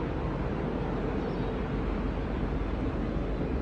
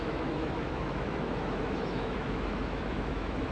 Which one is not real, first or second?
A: second